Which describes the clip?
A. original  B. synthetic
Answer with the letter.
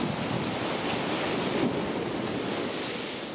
A